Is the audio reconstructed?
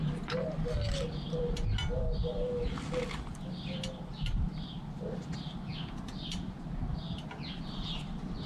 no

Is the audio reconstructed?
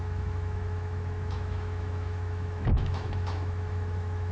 yes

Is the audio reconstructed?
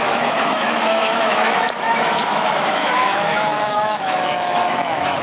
yes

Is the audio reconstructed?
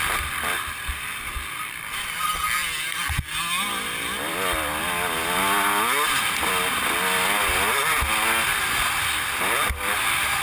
no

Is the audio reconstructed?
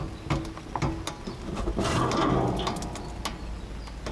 no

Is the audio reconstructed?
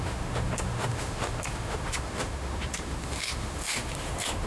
yes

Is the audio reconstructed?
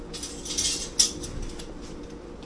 no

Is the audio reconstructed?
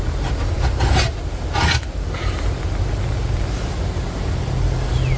no